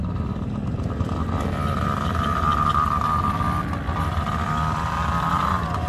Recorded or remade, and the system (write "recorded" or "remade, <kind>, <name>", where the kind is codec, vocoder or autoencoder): recorded